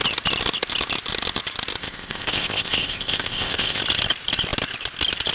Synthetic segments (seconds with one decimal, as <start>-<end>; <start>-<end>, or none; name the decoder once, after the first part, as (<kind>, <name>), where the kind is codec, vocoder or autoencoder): 1.8-3.8 (codec, ZipCodec)